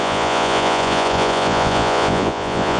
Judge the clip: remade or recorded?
remade